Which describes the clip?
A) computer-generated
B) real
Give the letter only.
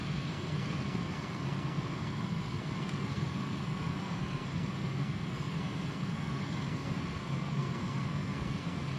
A